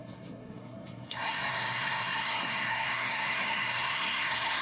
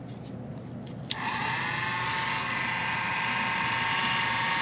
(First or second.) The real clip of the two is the second